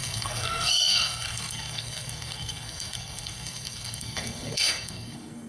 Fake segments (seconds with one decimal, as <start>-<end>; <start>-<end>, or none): 0.0-5.5